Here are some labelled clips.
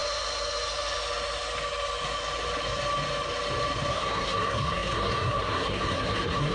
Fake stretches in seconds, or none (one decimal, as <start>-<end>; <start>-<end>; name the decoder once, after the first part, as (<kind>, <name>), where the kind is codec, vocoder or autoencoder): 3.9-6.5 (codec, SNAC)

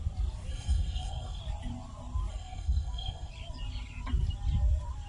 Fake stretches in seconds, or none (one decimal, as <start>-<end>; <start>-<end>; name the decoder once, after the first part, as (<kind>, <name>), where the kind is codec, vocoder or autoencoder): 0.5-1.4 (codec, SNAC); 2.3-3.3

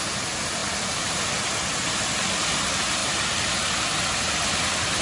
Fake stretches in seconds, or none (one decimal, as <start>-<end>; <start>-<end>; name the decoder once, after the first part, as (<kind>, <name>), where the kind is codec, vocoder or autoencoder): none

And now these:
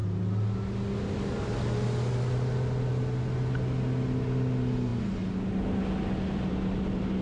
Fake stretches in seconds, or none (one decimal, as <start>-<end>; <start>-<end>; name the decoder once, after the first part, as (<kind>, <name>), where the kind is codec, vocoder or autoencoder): none